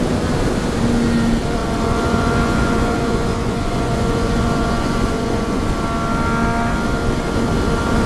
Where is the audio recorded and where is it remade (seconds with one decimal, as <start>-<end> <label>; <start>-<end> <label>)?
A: 0.0-1.6 recorded; 1.6-5.6 remade; 5.6-8.1 recorded